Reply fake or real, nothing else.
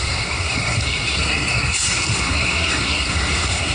fake